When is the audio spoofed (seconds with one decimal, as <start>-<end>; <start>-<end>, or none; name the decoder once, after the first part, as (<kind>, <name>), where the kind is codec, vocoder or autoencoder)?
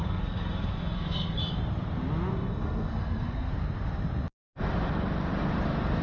0.0-1.4 (codec, SNAC); 2.3-3.5